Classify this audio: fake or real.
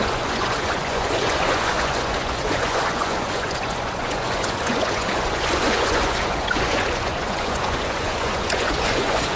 fake